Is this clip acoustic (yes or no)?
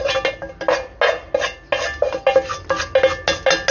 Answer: yes